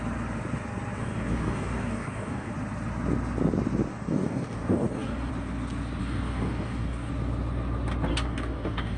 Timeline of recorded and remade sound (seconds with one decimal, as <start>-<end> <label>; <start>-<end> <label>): 0.0-1.0 recorded; 1.0-2.5 remade; 2.5-3.9 recorded; 3.9-5.3 remade; 5.3-6.0 recorded; 6.0-7.1 remade; 7.1-8.1 recorded; 8.1-9.0 remade